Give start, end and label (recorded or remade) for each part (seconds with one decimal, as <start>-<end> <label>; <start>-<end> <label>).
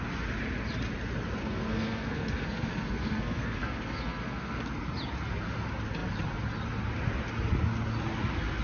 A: 0.0-1.4 recorded; 1.4-4.6 remade; 4.6-8.6 recorded